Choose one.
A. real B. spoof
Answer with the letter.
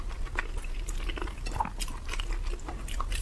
A